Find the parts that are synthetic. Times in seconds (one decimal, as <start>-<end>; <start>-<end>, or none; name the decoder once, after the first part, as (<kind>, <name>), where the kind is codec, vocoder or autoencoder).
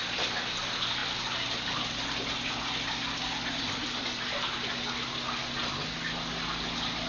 none